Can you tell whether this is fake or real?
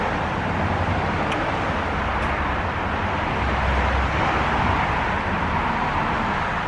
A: real